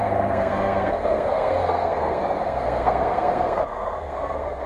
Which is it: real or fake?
fake